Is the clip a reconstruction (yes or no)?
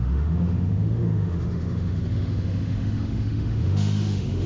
yes